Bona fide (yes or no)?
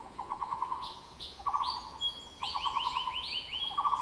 no